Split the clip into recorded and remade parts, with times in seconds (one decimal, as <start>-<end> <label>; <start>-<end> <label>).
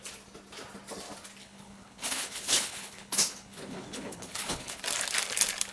0.0-1.4 recorded; 1.4-4.8 remade; 4.8-5.7 recorded